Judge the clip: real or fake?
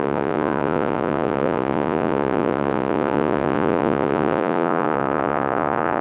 fake